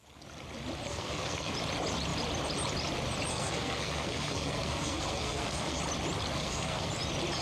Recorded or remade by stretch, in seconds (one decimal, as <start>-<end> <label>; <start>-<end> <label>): 0.0-0.9 recorded; 0.9-1.5 remade; 1.5-3.3 recorded; 3.3-5.8 remade; 5.8-6.4 recorded; 6.4-6.9 remade; 6.9-7.4 recorded